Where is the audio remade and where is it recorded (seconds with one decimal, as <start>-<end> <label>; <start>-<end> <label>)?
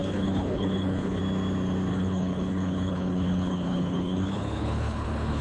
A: 0.0-1.2 remade; 1.2-1.9 recorded; 1.9-5.4 remade